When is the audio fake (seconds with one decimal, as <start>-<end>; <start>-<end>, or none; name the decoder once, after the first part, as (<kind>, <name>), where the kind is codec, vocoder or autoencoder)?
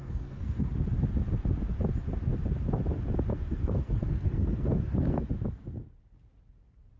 0.0-0.7 (codec, SNAC); 3.3-5.2